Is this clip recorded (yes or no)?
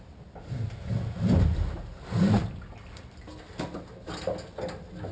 yes